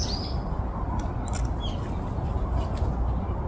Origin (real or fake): real